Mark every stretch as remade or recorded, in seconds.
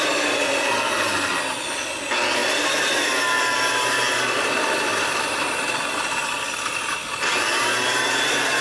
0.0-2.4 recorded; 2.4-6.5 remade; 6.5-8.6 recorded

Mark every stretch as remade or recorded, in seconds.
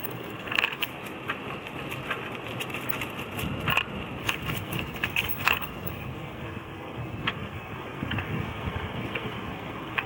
0.0-0.9 remade; 0.9-4.2 recorded; 4.2-10.1 remade